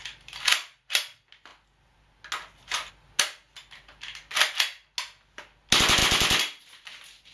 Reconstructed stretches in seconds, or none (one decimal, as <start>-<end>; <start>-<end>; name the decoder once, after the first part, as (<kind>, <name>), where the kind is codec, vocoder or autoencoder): none

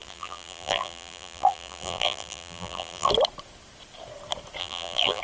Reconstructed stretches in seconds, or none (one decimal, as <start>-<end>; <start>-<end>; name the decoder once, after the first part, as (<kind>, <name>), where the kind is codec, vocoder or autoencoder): 0.0-3.1 (vocoder, BigVGAN v2); 4.6-5.2

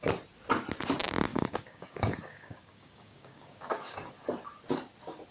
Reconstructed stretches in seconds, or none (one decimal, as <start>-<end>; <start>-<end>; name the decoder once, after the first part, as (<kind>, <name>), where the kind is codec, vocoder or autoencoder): 1.3-4.1 (codec, DAC)

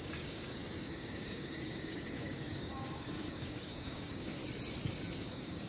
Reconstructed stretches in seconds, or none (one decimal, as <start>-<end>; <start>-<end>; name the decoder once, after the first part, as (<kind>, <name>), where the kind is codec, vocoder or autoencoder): 0.0-4.4 (codec, DAC); 5.2-5.7

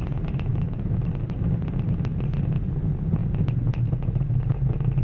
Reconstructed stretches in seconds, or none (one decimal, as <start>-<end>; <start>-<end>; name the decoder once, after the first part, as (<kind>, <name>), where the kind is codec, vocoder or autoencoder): 0.5-1.0 (autoencoder, DAC-VAE)

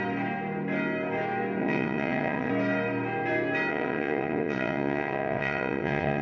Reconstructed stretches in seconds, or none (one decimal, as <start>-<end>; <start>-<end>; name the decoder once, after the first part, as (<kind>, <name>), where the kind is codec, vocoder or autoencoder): 1.6-2.5 (vocoder, WaveNeXt); 3.7-6.2

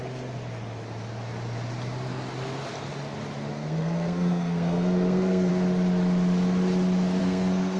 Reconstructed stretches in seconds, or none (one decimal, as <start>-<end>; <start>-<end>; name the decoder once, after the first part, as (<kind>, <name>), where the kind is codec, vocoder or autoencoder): 3.5-5.5 (codec, SNAC); 7.2-7.8